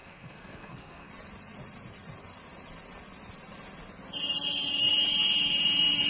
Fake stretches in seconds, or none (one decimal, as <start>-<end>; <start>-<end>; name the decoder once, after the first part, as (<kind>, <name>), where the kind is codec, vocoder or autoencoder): 0.0-1.1 (codec, SNAC)